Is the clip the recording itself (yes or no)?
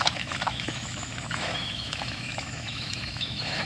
no